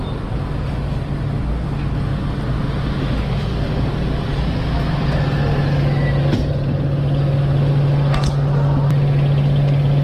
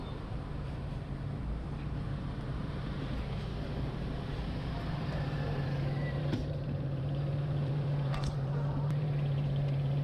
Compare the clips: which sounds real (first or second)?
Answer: first